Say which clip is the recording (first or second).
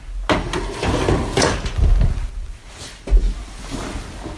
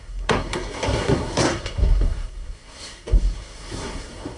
first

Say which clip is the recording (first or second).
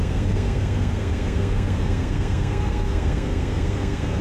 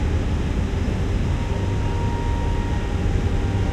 second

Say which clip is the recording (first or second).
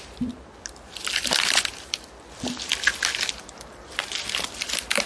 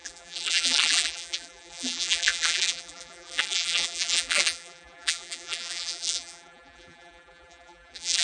first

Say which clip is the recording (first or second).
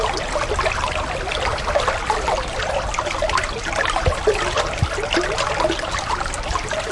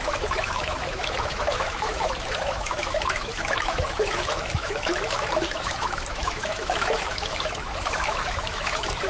first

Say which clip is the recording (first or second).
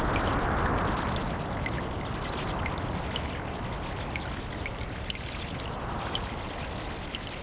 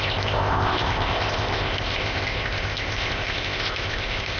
first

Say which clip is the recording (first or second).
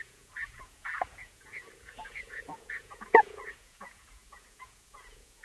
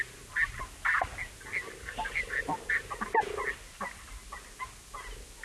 second